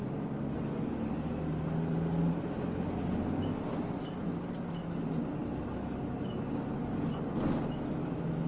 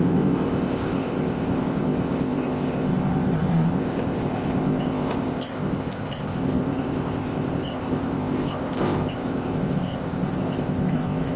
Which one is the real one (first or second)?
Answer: first